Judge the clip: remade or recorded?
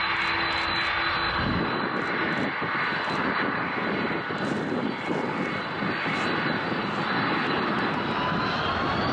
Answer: recorded